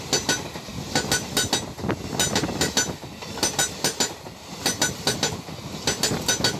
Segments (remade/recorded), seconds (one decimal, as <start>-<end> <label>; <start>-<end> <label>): 0.0-6.6 recorded